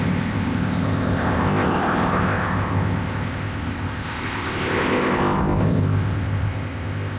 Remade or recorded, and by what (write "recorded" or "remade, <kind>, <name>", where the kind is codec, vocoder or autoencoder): remade, codec, ZipCodec